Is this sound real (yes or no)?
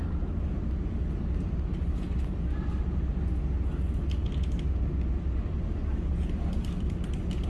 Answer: yes